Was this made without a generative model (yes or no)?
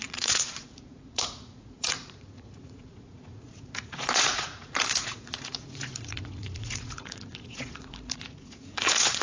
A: no